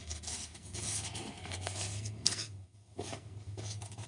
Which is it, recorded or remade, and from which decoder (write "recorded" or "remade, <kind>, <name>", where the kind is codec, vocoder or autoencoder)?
remade, codec, SNAC